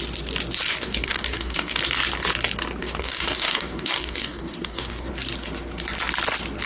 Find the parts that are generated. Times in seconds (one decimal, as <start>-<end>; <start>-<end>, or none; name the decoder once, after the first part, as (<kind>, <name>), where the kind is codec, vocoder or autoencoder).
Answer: 0.7-1.8 (codec, DAC); 2.8-5.1